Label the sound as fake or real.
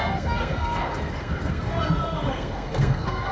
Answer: fake